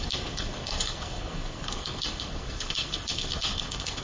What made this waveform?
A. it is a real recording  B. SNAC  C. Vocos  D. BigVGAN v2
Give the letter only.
B